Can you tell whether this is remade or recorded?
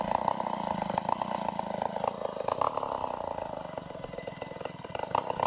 recorded